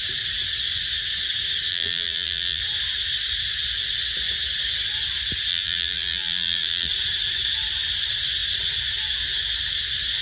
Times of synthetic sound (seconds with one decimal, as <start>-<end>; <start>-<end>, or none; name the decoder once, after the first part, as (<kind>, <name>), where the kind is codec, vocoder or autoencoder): 1.7-2.6 (vocoder, BigVGAN v2); 5.5-6.9